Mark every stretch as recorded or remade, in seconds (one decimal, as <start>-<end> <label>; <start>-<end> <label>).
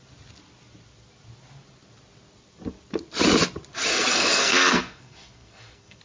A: 0.0-3.9 recorded; 3.9-6.0 remade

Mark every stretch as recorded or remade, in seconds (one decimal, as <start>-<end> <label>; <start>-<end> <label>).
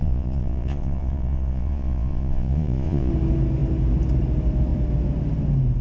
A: 0.0-3.1 remade; 3.1-5.8 recorded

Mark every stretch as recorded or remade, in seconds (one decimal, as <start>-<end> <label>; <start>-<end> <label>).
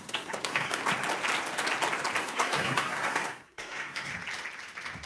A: 0.0-0.8 remade; 0.8-2.2 recorded; 2.2-4.1 remade; 4.1-5.1 recorded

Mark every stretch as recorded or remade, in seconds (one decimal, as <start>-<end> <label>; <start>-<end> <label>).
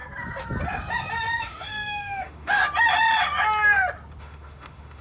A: 0.0-1.4 recorded; 1.4-2.6 remade; 2.6-4.2 recorded; 4.2-5.0 remade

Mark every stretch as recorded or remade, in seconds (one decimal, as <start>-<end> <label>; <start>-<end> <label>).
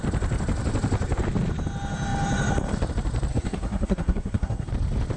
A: 0.0-3.3 recorded; 3.3-4.7 remade; 4.7-5.2 recorded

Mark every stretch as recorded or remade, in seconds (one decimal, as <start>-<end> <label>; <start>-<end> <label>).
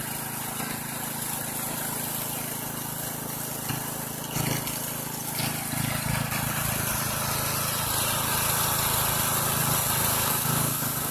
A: 0.0-10.1 recorded; 10.1-11.1 remade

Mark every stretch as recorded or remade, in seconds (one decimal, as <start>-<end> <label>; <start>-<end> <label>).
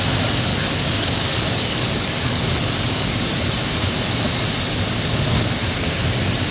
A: 0.0-0.5 recorded; 0.5-3.2 remade; 3.2-6.5 recorded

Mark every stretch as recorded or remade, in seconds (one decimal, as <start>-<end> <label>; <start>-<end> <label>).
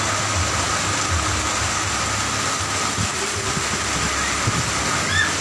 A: 0.0-5.4 recorded